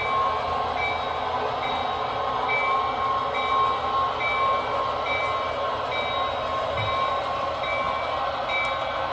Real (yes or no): yes